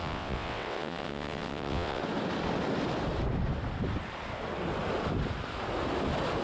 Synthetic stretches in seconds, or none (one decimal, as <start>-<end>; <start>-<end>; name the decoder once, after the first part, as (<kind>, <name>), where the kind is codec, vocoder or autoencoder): 0.0-2.0 (vocoder, WaveNeXt)